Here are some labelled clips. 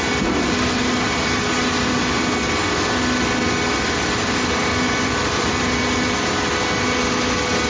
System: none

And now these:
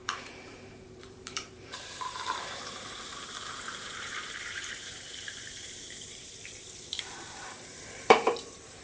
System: vocoder, BigVGAN v2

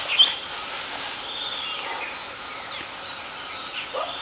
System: none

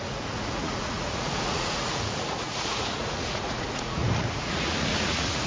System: vocoder, Vocos